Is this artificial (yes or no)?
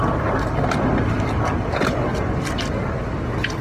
no